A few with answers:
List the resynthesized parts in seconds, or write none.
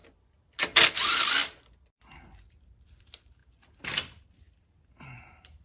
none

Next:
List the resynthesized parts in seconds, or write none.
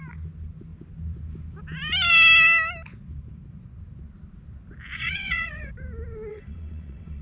5.0-5.7 (vocoder, WaveNeXt); 6.3-7.2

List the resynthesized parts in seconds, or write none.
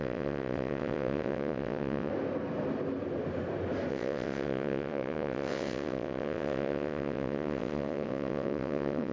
0.0-2.1 (vocoder, WaveNeXt); 3.9-9.1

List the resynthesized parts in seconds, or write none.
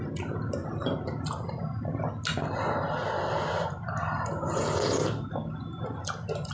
none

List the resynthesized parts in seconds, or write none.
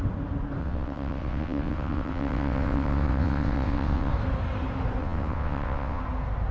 0.6-4.1 (vocoder, WaveNeXt); 5.0-6.0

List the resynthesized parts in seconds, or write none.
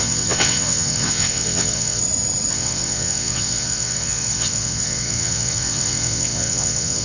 0.0-2.0 (vocoder, WaveNeXt); 2.5-7.0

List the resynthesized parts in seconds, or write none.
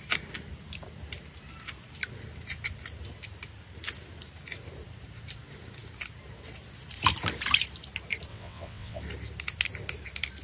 8.3-9.0 (vocoder, WaveNeXt)